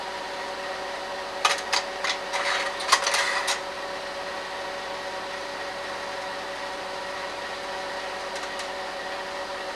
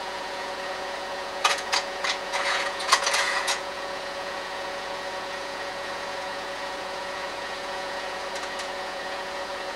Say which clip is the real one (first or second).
first